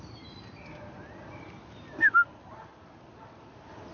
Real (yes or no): yes